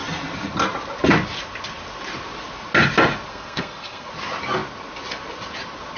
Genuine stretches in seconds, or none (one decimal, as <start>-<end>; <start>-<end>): 0.0-3.3; 4.1-6.0